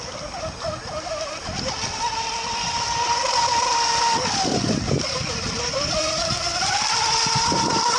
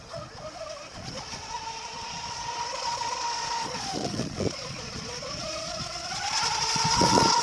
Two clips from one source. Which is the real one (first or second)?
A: first